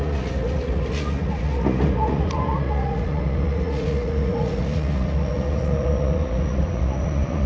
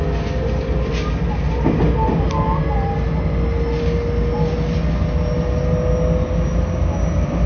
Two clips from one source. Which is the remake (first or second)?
first